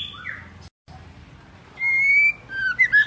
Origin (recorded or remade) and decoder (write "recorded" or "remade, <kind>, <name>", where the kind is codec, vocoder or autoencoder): recorded